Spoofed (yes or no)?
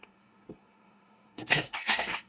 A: yes